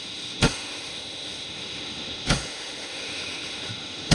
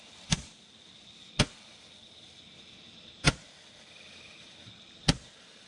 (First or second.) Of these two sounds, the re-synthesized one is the first